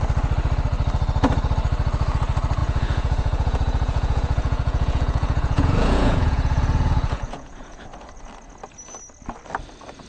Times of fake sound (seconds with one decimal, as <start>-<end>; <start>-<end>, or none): 2.6-7.8